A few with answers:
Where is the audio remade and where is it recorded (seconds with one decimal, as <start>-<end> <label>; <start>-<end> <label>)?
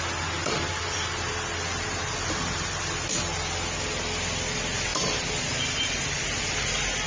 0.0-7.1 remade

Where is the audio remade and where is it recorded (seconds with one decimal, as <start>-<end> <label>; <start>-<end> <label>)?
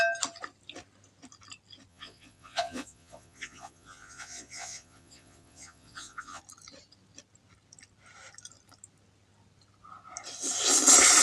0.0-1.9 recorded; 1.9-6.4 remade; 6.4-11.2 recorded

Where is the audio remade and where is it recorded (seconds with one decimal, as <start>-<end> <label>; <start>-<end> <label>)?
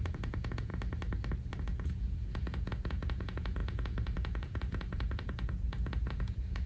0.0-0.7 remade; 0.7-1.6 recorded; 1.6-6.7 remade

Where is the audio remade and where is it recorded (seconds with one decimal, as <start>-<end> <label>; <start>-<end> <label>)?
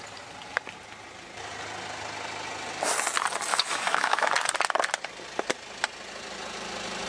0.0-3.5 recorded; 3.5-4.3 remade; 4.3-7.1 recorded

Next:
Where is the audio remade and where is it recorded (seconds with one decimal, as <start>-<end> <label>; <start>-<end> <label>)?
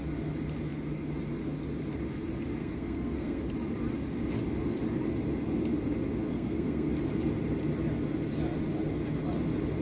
0.0-2.6 recorded; 2.6-3.4 remade; 3.4-6.3 recorded; 6.3-6.9 remade; 6.9-9.8 recorded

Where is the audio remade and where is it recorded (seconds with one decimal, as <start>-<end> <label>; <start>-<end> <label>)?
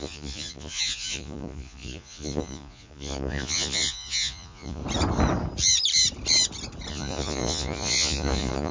0.0-4.8 remade; 4.8-6.9 recorded; 6.9-8.7 remade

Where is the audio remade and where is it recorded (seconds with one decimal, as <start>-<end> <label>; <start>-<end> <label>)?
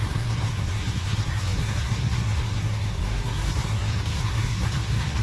0.0-5.2 remade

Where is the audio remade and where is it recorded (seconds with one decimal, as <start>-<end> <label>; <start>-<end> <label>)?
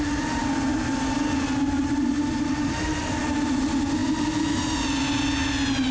0.0-4.0 recorded; 4.0-4.6 remade; 4.6-5.9 recorded